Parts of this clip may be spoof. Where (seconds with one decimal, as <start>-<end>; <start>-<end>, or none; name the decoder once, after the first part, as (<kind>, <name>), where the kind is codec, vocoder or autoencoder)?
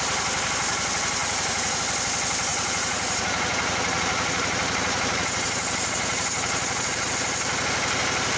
1.2-1.8 (vocoder, Vocos); 2.5-7.1